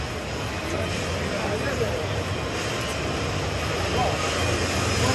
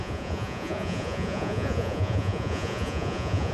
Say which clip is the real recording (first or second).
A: first